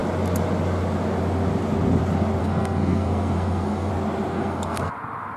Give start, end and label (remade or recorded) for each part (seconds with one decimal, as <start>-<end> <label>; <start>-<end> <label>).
0.0-2.4 recorded; 2.4-3.9 remade; 3.9-4.3 recorded; 4.3-4.9 remade; 4.9-5.4 recorded